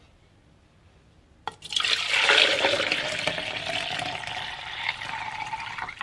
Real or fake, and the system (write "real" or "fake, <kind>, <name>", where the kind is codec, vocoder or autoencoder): real